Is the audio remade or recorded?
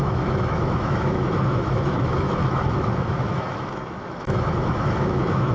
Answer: remade